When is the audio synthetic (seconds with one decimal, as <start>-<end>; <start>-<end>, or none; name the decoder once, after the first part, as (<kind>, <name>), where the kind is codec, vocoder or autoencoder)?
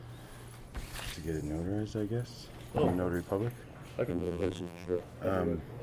4.1-5.0 (vocoder, BigVGAN v2)